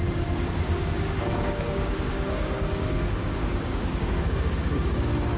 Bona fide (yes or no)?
no